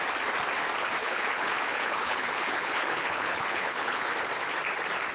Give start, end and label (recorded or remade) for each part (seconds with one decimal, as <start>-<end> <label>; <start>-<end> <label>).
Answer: 0.0-1.0 recorded; 1.0-4.1 remade; 4.1-5.1 recorded